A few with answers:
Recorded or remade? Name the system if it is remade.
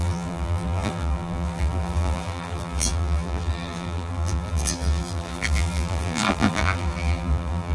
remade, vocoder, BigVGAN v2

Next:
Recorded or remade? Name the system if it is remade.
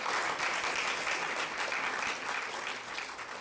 recorded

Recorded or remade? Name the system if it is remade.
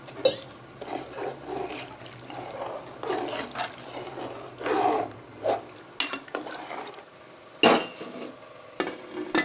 recorded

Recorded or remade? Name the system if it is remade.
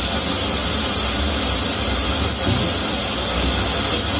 recorded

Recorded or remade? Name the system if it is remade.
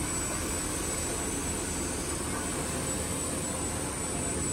recorded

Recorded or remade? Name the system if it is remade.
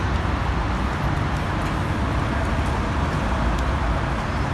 recorded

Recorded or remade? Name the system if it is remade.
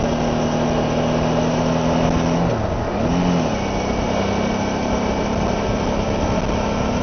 recorded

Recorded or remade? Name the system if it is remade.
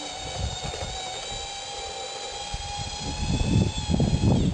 recorded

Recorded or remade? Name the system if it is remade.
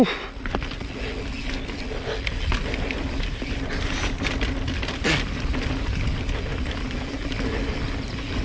recorded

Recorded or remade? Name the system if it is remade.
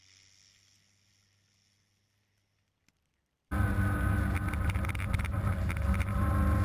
recorded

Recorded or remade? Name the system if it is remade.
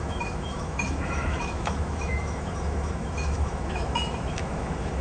remade, autoencoder, DAC-VAE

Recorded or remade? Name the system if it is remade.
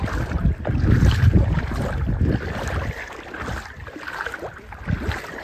recorded